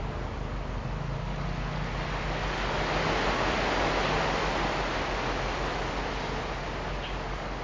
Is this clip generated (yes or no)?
no